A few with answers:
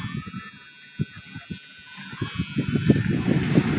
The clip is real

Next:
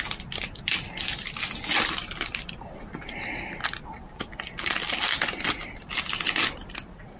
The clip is real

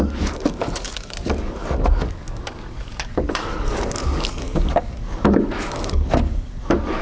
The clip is fake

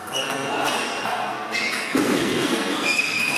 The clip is fake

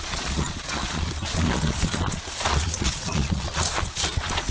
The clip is fake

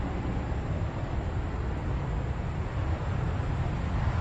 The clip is real